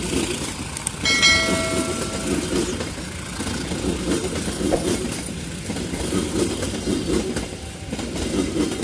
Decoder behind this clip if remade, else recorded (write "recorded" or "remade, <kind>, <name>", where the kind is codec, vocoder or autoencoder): recorded